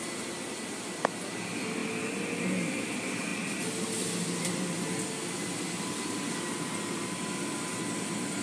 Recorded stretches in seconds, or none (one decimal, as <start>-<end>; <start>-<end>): 0.0-8.4